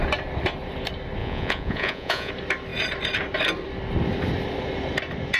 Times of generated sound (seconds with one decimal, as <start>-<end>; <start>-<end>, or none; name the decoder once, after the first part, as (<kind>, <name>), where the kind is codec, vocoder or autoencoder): 1.2-2.3 (vocoder, Vocos)